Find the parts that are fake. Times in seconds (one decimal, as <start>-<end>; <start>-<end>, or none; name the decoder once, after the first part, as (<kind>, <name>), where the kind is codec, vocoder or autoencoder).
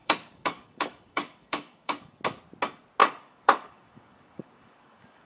0.0-2.2 (codec, DAC); 3.0-5.3